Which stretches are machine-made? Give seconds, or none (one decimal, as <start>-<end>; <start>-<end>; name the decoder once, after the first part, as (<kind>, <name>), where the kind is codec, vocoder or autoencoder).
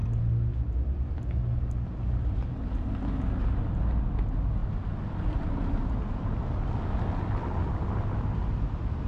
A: none